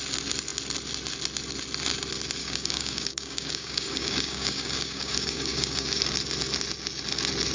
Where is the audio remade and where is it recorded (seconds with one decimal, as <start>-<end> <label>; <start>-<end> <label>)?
0.0-2.4 recorded; 2.4-6.0 remade; 6.0-7.5 recorded